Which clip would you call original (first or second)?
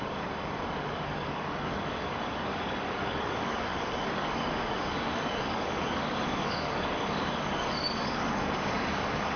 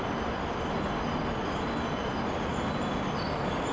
second